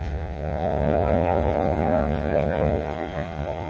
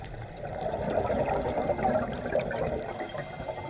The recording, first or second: second